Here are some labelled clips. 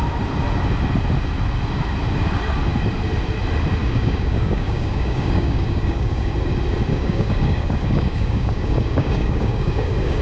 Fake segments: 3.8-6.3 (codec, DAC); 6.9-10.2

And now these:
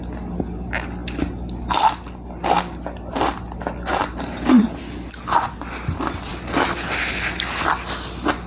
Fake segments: 3.9-4.8 (vocoder, BigVGAN v2)

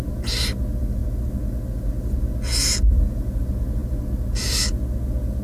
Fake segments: none

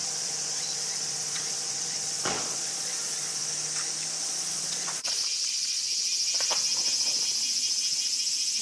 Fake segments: 0.0-3.5 (vocoder, Vocos); 4.2-5.9

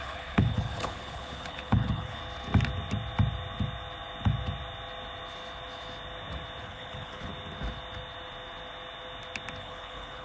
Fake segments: 0.0-2.2 (codec, HILCodec); 6.6-7.3; 9.6-10.2